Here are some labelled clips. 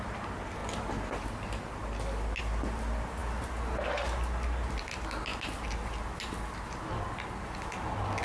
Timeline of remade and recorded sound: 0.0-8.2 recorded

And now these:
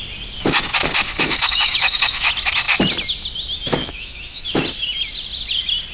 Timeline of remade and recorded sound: 0.0-1.0 recorded; 1.0-2.3 remade; 2.3-3.8 recorded; 3.8-4.5 remade; 4.5-5.9 recorded

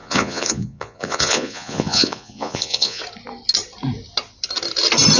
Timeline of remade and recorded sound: 0.0-3.0 remade; 3.0-5.2 recorded

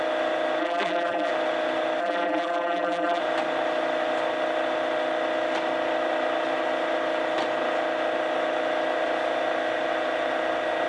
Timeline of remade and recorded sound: 0.0-0.6 recorded; 0.6-1.3 remade; 1.3-2.0 recorded; 2.0-3.2 remade; 3.2-10.9 recorded

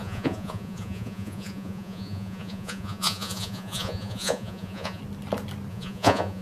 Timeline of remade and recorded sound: 0.0-5.0 remade; 5.0-5.7 recorded; 5.7-6.4 remade